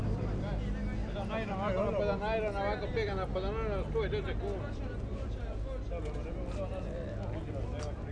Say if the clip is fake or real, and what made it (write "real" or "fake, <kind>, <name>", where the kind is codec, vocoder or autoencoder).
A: real